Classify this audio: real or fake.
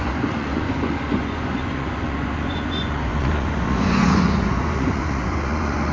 fake